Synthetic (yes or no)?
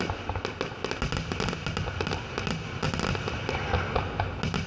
no